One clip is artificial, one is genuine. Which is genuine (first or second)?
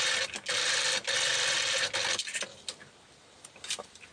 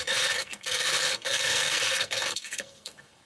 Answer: first